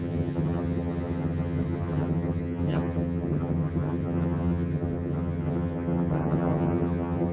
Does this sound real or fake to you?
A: fake